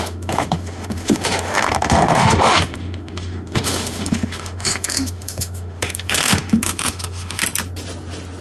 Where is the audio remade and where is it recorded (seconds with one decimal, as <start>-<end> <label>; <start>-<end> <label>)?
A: 0.0-7.4 remade; 7.4-8.4 recorded